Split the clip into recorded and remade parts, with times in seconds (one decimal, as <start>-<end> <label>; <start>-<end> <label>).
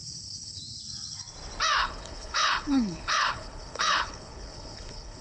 0.0-0.6 remade; 0.6-1.8 recorded; 1.8-5.2 remade